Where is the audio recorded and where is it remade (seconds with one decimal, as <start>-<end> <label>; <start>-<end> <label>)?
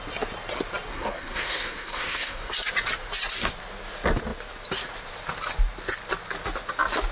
0.0-0.9 recorded; 0.9-2.5 remade; 2.5-7.1 recorded